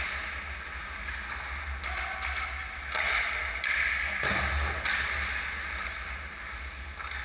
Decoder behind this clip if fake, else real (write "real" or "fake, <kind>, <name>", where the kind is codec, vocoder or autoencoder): real